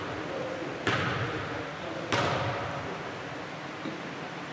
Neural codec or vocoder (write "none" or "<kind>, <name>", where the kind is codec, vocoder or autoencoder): none